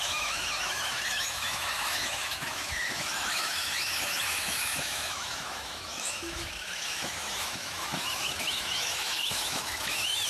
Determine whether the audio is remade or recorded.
remade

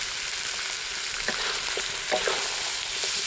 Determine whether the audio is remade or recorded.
recorded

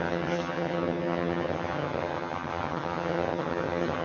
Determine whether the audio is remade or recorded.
remade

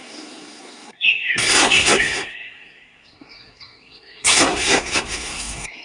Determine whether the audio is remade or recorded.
remade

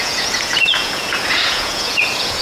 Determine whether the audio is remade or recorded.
remade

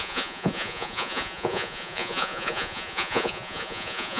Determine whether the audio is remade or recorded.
remade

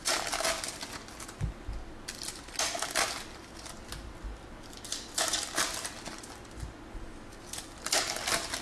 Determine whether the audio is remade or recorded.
recorded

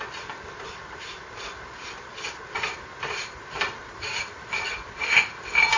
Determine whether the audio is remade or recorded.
recorded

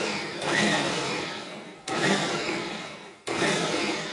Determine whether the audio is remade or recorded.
remade